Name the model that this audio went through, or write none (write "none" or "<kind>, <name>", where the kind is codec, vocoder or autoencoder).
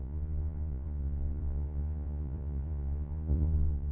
vocoder, Vocos